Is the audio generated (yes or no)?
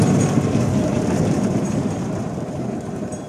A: yes